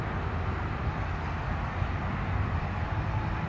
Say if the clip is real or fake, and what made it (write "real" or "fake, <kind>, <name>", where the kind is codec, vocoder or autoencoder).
real